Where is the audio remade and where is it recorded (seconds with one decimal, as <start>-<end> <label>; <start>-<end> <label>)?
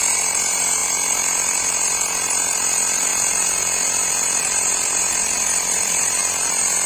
0.0-3.1 remade; 3.1-4.4 recorded; 4.4-6.2 remade; 6.2-6.9 recorded